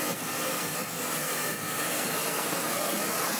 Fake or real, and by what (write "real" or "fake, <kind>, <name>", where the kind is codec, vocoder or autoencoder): fake, codec, SNAC